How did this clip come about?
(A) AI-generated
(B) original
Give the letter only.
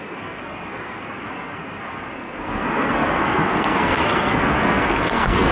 A